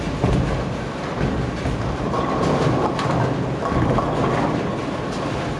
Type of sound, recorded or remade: recorded